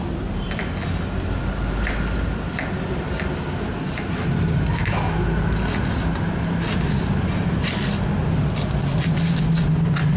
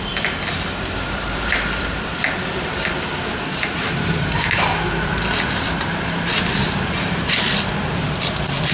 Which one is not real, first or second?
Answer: second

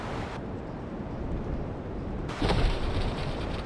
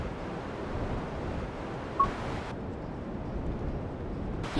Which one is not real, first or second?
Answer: first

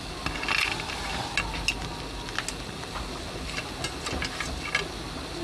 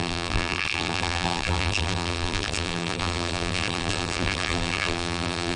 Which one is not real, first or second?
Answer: second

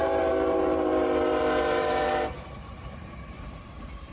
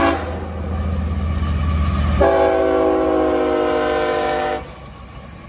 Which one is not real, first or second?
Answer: first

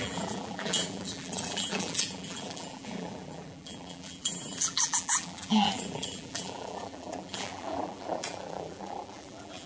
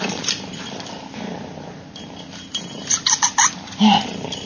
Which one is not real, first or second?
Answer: first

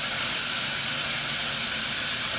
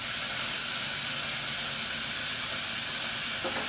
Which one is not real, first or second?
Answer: first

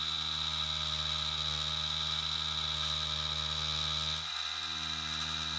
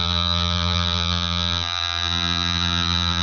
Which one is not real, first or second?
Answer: second